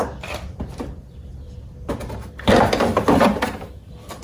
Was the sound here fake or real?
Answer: fake